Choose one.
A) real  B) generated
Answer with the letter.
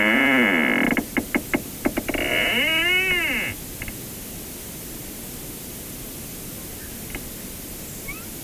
A